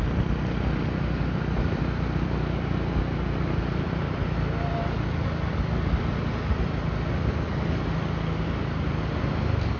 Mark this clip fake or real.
real